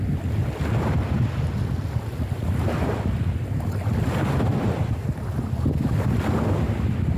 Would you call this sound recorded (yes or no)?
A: yes